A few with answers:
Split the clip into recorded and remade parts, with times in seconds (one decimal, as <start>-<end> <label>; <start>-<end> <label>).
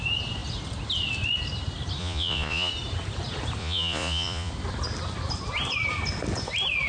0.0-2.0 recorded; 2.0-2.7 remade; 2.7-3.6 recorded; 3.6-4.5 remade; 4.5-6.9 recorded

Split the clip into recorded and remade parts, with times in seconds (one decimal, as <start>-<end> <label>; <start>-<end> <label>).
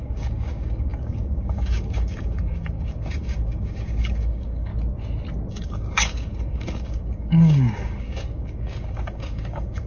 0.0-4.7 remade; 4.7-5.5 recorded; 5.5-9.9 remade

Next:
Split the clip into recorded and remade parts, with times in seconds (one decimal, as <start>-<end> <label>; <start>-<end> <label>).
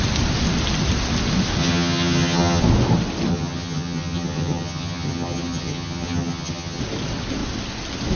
0.0-1.6 recorded; 1.6-2.6 remade; 2.6-3.3 recorded; 3.3-6.8 remade; 6.8-8.2 recorded